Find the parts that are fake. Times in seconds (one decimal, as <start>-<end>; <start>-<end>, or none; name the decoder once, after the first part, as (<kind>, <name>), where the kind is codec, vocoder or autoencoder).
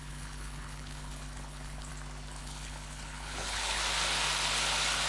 0.0-1.9 (codec, HILCodec); 2.4-3.8